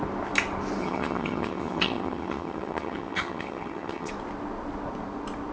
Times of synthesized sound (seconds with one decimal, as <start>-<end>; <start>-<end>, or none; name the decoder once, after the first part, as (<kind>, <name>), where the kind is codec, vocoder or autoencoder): 0.8-4.1 (vocoder, HiFi-GAN)